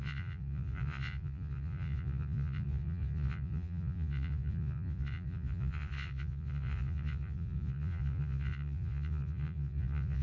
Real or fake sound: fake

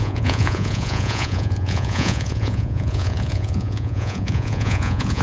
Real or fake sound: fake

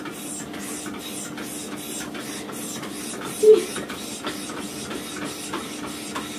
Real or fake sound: real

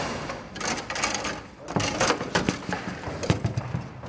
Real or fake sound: real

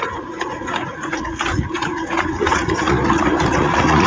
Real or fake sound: fake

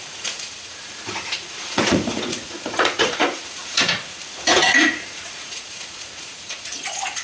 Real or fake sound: fake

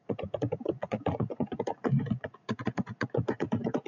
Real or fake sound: fake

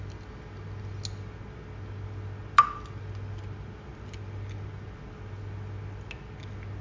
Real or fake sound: real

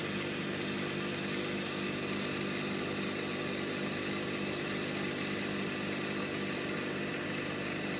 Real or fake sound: real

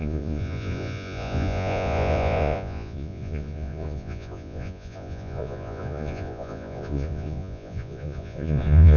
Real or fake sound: fake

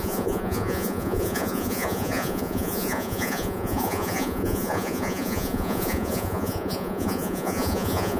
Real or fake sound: fake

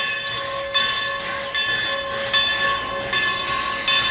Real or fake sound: real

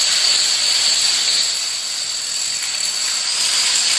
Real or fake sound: real